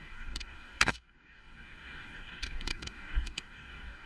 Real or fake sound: fake